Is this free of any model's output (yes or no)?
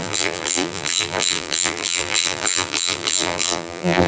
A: no